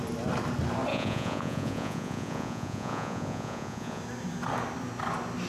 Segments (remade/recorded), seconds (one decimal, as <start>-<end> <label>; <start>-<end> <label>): 0.0-0.9 recorded; 0.9-4.0 remade; 4.0-5.5 recorded